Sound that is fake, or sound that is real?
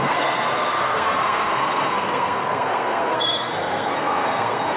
fake